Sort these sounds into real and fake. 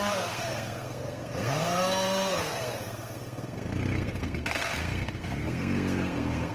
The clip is fake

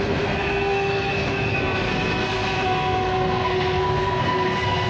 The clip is fake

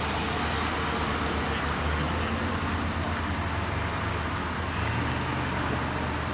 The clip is real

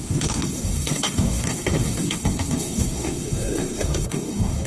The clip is fake